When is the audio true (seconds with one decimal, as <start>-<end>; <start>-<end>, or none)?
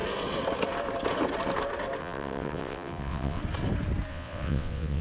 0.0-2.0; 3.4-4.1